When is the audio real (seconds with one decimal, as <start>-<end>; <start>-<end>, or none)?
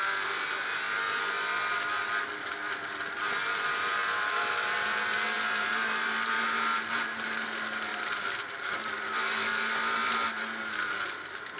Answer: 0.0-3.8; 5.7-11.6